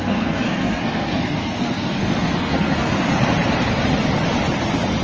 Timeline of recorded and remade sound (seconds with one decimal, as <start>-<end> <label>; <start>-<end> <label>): 0.0-2.9 remade; 2.9-5.0 recorded